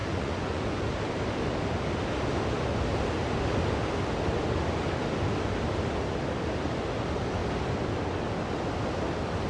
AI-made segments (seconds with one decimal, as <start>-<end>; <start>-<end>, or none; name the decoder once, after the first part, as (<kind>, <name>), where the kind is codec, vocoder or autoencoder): 0.0-0.8 (vocoder, Vocos)